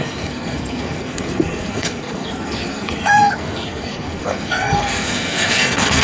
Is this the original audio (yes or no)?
no